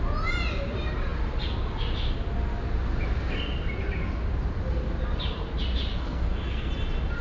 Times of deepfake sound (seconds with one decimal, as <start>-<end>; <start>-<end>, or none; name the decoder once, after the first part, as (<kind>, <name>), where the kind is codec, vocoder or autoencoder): 5.9-6.7 (codec, SNAC)

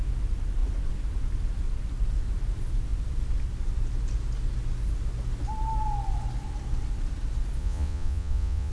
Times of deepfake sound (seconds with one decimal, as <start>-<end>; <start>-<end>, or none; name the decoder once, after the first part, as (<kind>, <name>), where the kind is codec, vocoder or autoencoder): 7.6-8.7 (vocoder, Vocos)

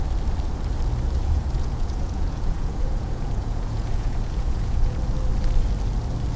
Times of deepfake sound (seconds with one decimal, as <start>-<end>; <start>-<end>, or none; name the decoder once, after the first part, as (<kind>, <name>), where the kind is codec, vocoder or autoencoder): 1.2-5.0 (vocoder, Vocos)